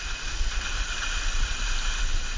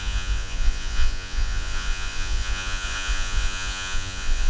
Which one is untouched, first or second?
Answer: first